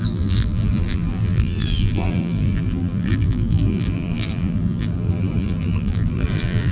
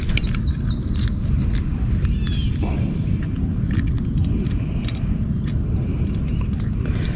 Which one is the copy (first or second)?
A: first